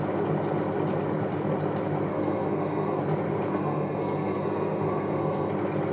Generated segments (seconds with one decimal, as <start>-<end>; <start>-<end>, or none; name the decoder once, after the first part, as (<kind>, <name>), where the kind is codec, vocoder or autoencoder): 2.1-3.0 (codec, SNAC); 3.5-5.5

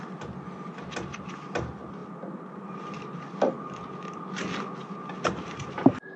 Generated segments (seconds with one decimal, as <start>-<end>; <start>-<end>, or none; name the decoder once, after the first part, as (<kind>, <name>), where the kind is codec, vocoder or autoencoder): none